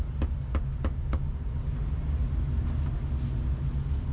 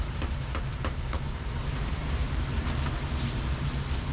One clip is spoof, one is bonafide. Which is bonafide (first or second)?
first